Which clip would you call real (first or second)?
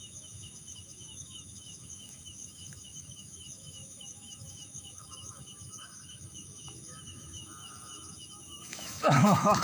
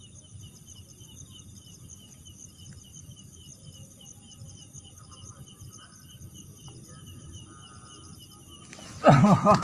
second